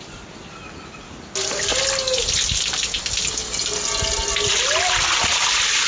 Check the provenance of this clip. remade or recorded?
recorded